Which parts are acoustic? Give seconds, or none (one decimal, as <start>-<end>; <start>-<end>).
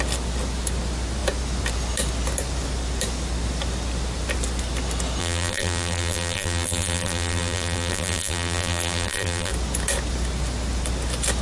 0.0-5.2; 9.5-11.4